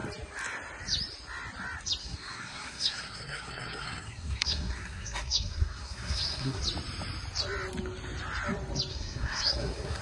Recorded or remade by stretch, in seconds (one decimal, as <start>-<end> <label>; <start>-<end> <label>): 0.0-2.0 recorded; 2.0-6.6 remade; 6.6-8.9 recorded; 8.9-10.0 remade